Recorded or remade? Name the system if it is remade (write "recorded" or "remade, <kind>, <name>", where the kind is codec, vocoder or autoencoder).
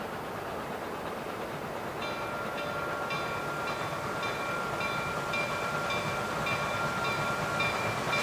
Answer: remade, vocoder, BigVGAN v2